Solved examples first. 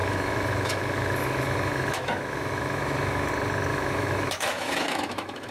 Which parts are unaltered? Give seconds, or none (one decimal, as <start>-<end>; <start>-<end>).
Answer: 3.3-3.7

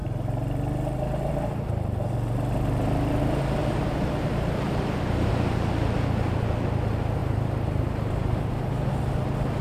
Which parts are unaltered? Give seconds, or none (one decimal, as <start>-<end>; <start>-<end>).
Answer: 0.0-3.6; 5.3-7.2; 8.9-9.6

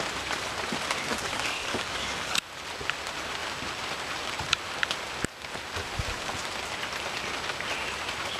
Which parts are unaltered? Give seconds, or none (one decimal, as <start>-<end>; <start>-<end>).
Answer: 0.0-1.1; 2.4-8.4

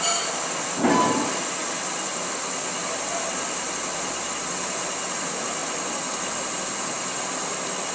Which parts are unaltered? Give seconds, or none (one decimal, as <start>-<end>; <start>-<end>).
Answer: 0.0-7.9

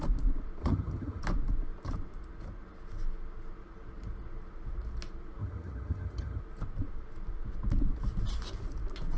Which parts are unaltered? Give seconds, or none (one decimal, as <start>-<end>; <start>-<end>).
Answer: 0.0-0.6; 1.2-5.4; 6.4-9.2

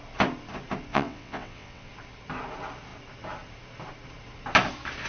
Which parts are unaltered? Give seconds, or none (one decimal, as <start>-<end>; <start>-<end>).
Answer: 0.0-0.9; 1.9-5.1

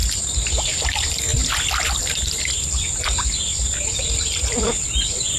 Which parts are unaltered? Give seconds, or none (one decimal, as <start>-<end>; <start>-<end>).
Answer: 0.0-5.4

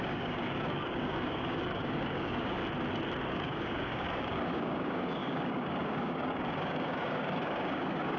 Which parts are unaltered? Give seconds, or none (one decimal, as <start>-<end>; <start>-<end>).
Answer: 2.6-3.3